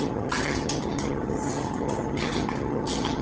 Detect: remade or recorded remade